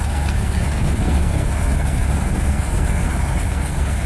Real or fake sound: fake